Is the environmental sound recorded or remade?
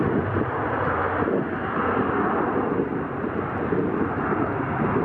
recorded